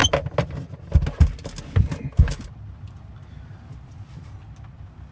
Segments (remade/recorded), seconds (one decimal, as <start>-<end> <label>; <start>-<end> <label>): 0.0-5.1 recorded